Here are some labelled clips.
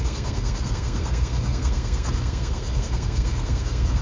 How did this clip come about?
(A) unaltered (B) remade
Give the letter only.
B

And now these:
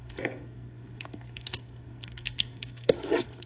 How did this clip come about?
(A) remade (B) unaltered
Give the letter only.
A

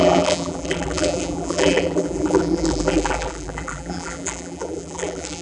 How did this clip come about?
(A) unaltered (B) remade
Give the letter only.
B